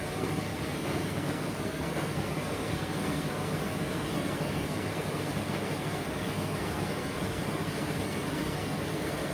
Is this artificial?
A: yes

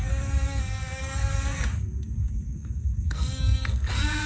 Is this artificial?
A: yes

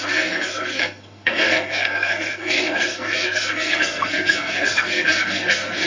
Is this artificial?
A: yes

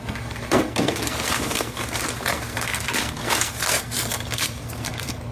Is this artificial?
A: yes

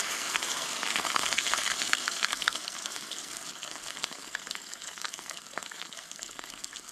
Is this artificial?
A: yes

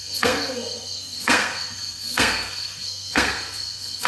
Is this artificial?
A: yes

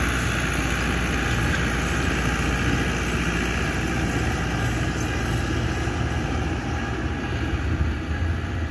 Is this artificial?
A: no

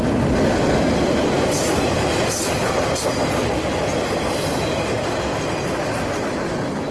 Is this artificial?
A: no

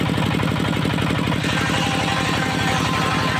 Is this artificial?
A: no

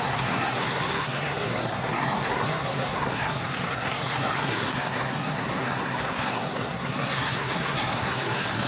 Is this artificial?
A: yes